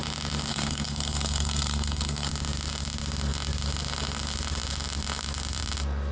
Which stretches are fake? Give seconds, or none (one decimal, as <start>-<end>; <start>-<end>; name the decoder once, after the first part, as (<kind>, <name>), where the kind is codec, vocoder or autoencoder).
0.5-2.3 (codec, SNAC)